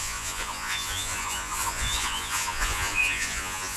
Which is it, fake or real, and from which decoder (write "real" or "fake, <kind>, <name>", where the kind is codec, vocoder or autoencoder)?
fake, vocoder, Vocos